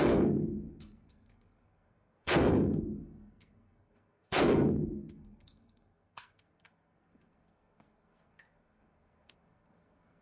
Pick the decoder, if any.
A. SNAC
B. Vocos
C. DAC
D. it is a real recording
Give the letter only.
A